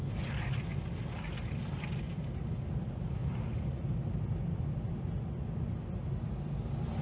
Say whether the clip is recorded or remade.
recorded